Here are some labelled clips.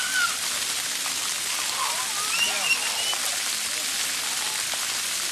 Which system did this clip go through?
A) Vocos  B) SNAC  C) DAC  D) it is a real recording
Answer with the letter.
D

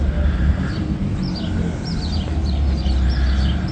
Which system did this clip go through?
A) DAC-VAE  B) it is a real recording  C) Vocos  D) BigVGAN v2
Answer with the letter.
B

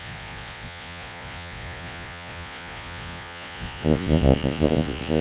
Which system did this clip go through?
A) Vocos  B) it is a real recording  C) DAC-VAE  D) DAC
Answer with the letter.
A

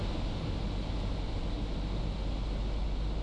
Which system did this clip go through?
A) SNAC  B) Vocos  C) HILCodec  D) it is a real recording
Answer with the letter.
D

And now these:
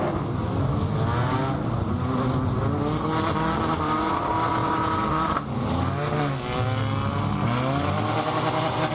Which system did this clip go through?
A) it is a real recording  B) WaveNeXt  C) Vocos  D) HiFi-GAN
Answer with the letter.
A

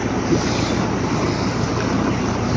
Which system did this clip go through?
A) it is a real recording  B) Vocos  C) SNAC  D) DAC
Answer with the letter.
A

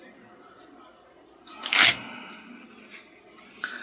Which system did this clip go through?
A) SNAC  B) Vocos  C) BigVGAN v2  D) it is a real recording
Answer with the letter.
D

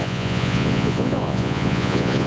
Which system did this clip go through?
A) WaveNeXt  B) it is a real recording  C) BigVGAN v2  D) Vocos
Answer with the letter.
D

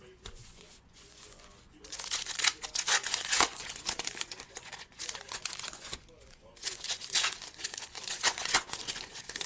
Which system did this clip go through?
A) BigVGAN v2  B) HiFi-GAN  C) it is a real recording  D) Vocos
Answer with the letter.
D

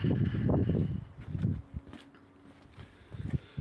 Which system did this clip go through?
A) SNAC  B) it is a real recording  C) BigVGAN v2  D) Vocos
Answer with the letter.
B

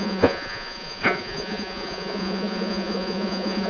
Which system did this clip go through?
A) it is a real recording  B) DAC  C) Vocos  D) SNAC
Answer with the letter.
C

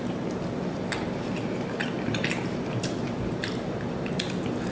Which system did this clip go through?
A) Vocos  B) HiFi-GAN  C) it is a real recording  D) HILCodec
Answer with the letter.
C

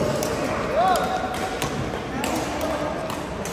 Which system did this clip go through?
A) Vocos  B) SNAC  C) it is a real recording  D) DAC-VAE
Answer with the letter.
C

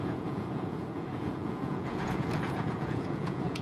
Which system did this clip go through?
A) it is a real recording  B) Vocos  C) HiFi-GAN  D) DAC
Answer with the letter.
B